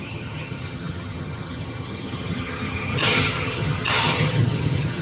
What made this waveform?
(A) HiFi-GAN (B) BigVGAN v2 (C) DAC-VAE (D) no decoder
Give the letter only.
A